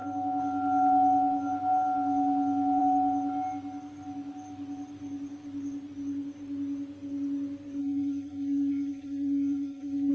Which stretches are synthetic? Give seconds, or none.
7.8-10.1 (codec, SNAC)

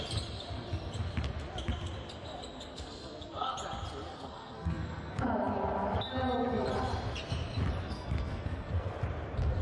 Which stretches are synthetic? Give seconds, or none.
2.7-3.5 (codec, SNAC); 4.1-5.2; 7.8-8.9

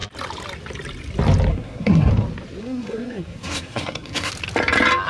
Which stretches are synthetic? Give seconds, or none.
1.5-2.1 (codec, SNAC); 2.6-4.3

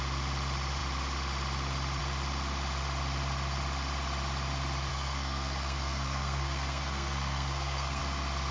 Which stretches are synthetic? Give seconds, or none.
4.9-8.0 (codec, SNAC)

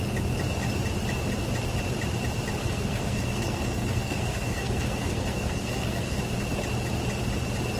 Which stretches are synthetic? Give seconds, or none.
2.6-6.2 (codec, SNAC)

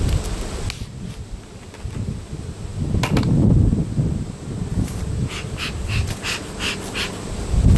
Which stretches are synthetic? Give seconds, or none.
none

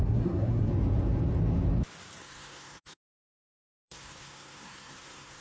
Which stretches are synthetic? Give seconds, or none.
0.0-0.7 (codec, SNAC); 2.2-5.4

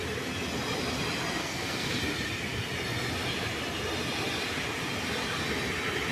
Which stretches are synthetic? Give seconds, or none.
1.4-2.0 (codec, SNAC)